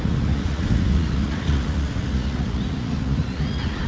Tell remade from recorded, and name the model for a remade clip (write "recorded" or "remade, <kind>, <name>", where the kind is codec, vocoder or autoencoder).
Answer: remade, vocoder, Vocos